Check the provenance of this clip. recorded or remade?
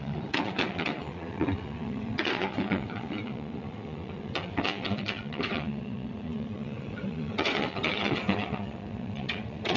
remade